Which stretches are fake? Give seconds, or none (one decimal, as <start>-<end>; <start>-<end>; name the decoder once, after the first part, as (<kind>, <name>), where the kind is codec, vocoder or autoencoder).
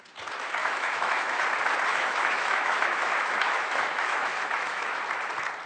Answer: 0.6-1.4 (autoencoder, DAC-VAE); 1.9-5.0